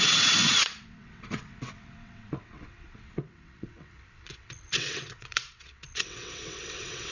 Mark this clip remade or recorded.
remade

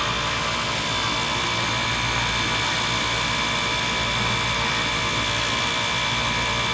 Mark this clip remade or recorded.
recorded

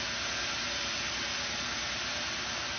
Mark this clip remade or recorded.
recorded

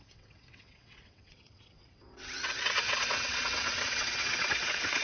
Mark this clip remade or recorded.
remade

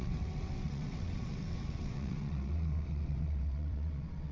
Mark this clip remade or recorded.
remade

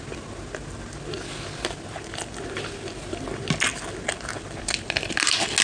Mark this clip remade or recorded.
recorded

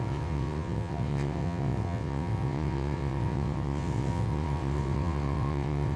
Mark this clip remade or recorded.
remade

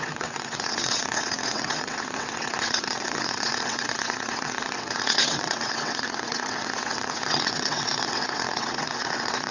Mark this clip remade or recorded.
remade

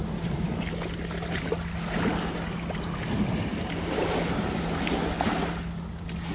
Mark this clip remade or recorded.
recorded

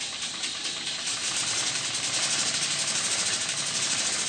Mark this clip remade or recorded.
recorded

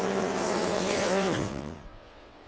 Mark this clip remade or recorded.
remade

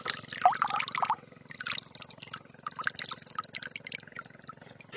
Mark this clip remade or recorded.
recorded